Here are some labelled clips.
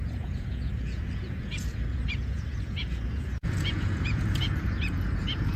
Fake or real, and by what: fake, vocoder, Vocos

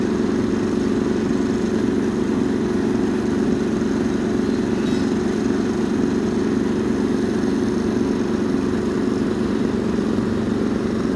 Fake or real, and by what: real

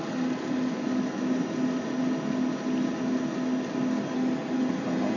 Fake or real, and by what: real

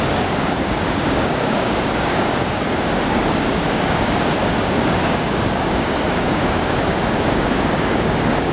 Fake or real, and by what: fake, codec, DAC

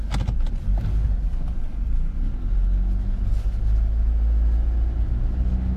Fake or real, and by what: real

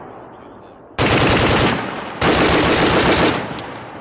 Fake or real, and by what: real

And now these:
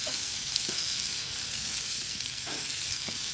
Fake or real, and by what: fake, codec, SNAC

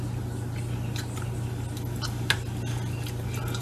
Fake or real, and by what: real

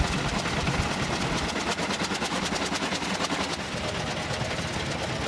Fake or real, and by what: real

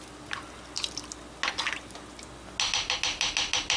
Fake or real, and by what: real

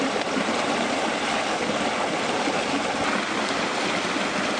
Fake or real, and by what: real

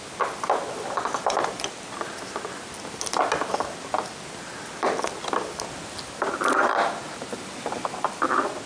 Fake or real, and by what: real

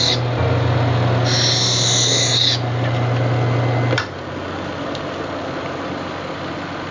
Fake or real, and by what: real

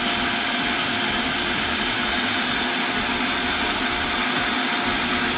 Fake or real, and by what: real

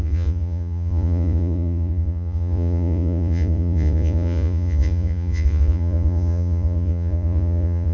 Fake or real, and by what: fake, vocoder, Vocos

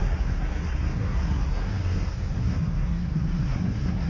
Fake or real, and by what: fake, codec, SNAC